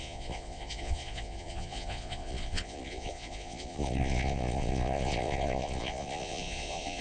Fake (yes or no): yes